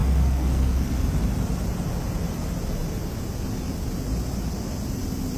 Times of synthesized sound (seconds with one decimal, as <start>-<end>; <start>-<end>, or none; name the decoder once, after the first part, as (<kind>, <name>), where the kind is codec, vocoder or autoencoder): 0.0-1.0 (codec, SNAC)